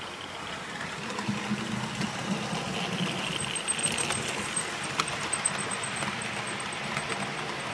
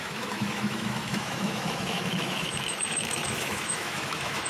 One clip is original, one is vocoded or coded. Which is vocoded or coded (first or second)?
second